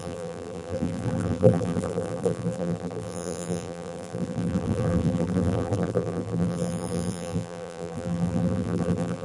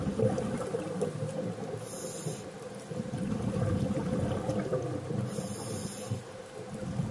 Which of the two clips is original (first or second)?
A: second